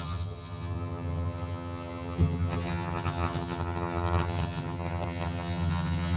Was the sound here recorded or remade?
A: remade